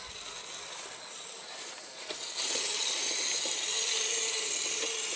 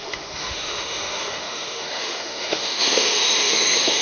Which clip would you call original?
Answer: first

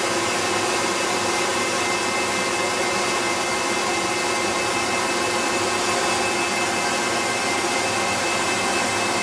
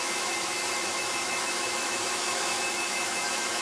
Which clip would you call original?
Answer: first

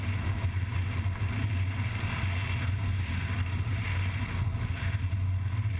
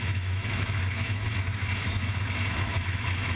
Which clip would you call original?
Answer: first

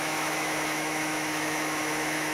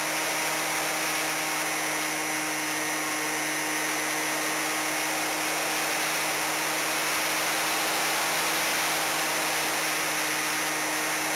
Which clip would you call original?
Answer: second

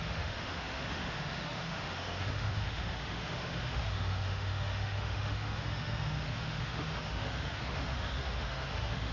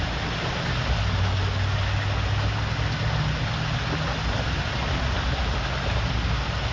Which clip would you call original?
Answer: second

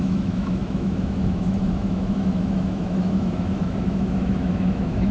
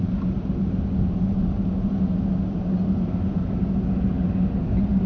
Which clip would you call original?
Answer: second